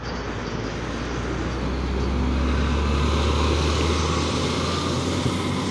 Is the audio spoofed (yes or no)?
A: no